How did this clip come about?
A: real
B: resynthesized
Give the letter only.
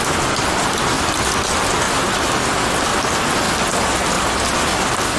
A